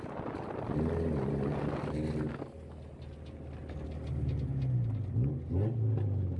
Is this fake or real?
real